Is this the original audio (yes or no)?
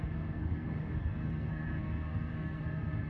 no